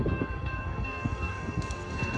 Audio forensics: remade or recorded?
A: remade